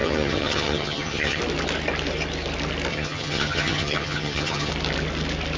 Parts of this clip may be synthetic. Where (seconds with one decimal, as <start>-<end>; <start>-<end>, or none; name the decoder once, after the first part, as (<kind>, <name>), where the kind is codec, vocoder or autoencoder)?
0.0-1.4 (vocoder, HiFi-GAN); 2.9-4.7